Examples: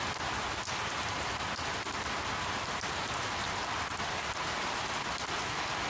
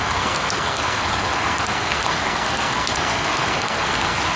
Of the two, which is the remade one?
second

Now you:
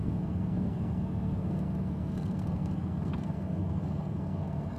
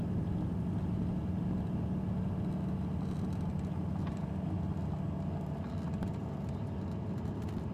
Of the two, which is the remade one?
first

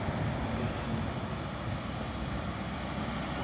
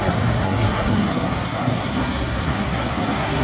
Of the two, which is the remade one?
second